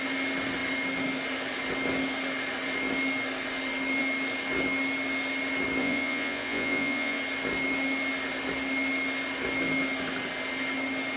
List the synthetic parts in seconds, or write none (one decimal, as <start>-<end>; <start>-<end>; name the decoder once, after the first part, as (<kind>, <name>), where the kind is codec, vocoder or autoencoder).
5.8-7.2 (vocoder, Vocos)